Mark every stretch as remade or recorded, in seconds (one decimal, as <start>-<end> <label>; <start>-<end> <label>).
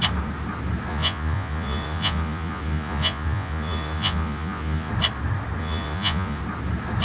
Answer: 0.0-0.9 recorded; 0.9-4.9 remade; 4.9-5.6 recorded; 5.6-6.4 remade; 6.4-7.0 recorded